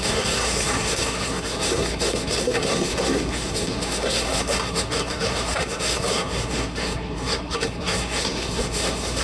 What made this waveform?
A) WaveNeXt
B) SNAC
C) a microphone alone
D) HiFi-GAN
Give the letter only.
B